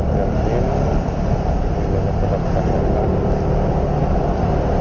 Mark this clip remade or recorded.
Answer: recorded